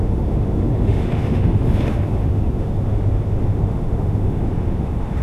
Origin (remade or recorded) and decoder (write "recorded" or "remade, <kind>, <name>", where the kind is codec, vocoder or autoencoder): remade, autoencoder, DAC-VAE